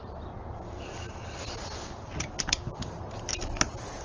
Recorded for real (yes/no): yes